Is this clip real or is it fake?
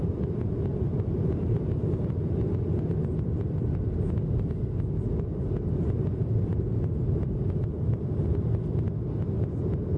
real